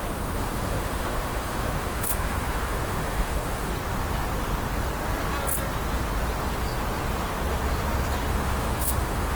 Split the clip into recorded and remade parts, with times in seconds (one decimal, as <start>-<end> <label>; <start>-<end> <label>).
0.0-3.7 remade; 3.7-8.3 recorded; 8.3-9.3 remade

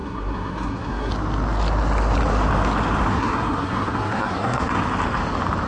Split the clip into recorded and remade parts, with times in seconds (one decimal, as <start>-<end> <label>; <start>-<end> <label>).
0.0-1.1 remade; 1.1-3.1 recorded; 3.1-4.8 remade; 4.8-5.7 recorded

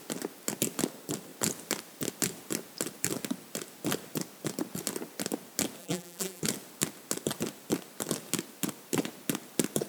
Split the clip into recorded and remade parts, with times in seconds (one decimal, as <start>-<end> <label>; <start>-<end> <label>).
0.0-5.8 recorded; 5.8-6.4 remade; 6.4-9.9 recorded

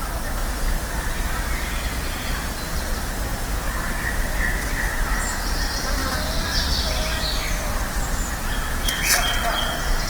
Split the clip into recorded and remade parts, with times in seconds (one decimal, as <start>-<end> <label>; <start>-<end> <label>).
0.0-6.0 recorded; 6.0-6.6 remade; 6.6-10.1 recorded

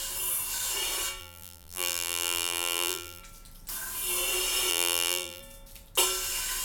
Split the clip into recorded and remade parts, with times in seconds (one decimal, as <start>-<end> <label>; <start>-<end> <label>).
0.0-1.2 recorded; 1.2-3.2 remade; 3.2-4.7 recorded; 4.7-5.4 remade; 5.4-6.6 recorded

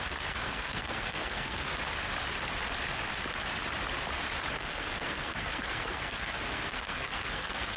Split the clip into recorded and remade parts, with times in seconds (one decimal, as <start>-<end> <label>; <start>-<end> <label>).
0.0-1.7 remade; 1.7-4.5 recorded; 4.5-7.8 remade